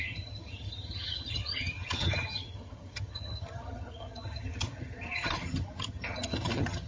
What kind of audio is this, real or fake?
fake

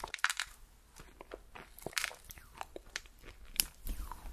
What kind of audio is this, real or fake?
real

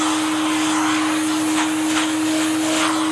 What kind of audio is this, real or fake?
real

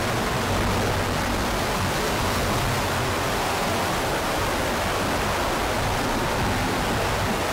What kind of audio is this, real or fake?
real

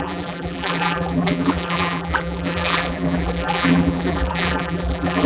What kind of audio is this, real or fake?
fake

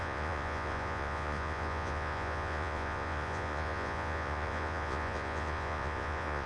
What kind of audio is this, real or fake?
fake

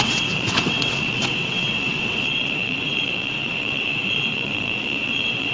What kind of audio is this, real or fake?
fake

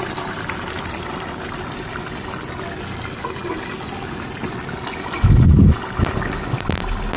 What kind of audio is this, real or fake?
real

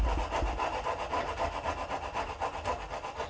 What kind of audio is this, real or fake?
real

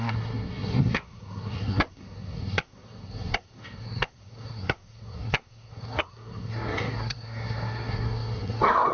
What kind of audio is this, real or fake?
fake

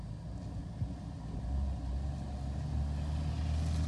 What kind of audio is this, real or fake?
real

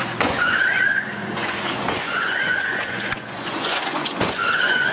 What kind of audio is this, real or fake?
fake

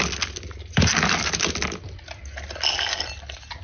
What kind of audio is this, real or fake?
real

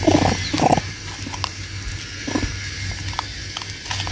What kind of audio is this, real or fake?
real